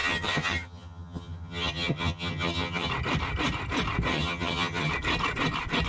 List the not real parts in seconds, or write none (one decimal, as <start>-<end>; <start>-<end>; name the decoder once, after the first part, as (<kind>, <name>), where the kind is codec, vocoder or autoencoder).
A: 0.0-2.9 (vocoder, HiFi-GAN); 4.1-4.9